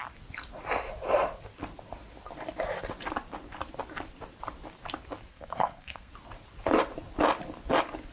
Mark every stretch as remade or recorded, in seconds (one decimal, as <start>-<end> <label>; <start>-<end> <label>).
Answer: 0.0-5.3 recorded; 5.3-6.1 remade; 6.1-8.1 recorded